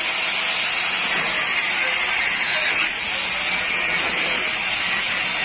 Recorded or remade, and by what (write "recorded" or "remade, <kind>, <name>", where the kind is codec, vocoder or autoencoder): recorded